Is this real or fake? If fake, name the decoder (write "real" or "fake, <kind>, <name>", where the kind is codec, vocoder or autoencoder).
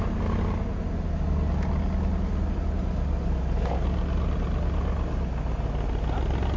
real